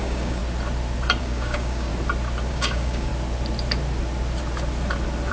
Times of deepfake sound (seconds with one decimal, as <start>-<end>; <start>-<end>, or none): 0.0-0.4; 1.2-1.9; 2.5-3.1